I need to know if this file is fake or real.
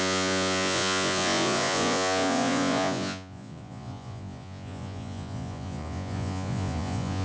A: fake